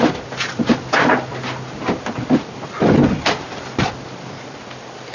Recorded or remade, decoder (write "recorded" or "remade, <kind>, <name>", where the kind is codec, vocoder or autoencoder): recorded